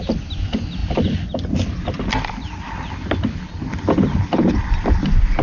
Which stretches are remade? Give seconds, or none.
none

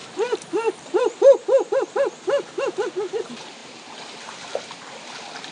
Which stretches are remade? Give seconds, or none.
0.0-1.0 (vocoder, BigVGAN v2); 3.6-4.6

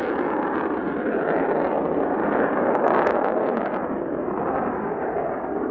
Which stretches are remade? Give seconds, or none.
2.2-5.7 (codec, DAC)

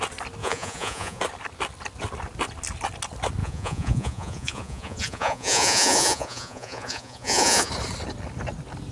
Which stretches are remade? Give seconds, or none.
0.4-1.2 (vocoder, Vocos); 3.4-7.7

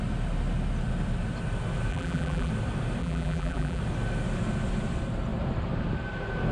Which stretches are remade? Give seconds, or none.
1.9-2.5 (vocoder, BigVGAN v2); 3.0-3.8

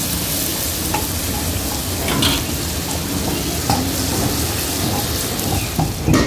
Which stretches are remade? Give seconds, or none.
none

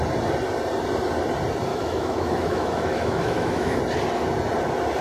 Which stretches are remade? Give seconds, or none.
1.7-3.8 (autoencoder, DAC-VAE)

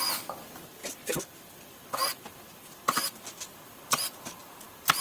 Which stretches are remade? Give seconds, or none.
0.0-5.0 (vocoder, BigVGAN v2)